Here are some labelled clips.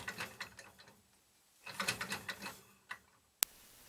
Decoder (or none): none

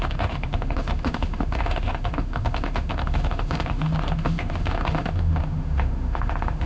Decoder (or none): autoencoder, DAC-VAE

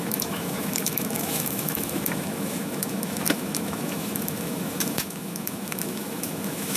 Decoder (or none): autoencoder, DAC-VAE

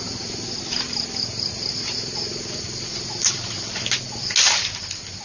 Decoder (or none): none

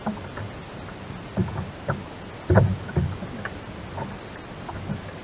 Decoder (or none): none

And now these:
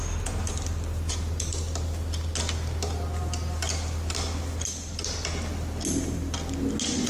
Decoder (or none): none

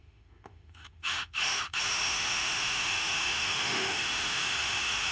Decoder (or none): autoencoder, DAC-VAE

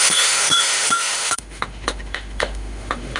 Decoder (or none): autoencoder, DAC-VAE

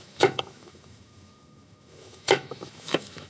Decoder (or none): autoencoder, DAC-VAE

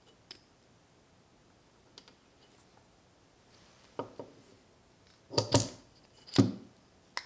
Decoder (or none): none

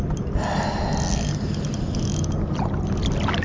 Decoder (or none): none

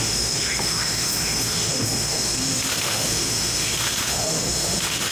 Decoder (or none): autoencoder, DAC-VAE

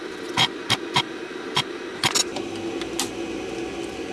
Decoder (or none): none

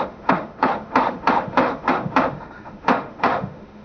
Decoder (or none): autoencoder, DAC-VAE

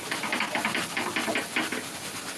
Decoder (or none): none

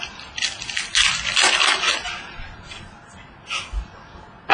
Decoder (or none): none